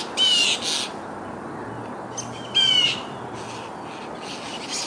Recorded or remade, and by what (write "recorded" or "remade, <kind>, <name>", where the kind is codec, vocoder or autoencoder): recorded